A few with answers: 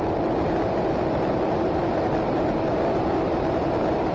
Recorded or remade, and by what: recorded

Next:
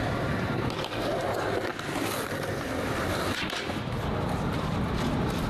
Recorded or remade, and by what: remade, vocoder, BigVGAN v2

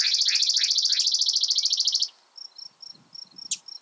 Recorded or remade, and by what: recorded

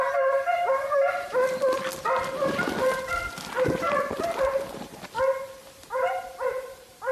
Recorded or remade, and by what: recorded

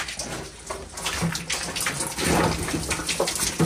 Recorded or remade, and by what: recorded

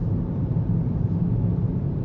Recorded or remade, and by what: remade, vocoder, BigVGAN v2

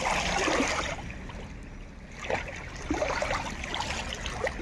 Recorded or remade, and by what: recorded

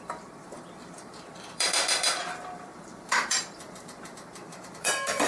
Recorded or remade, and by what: remade, vocoder, BigVGAN v2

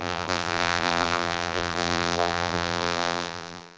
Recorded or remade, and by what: remade, vocoder, BigVGAN v2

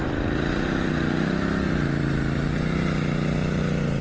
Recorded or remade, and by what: recorded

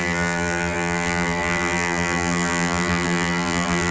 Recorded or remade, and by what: remade, vocoder, BigVGAN v2